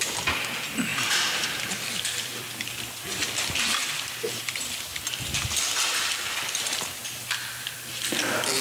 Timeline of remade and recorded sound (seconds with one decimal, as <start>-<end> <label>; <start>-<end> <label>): 0.0-0.9 recorded; 0.9-4.4 remade; 4.4-8.6 recorded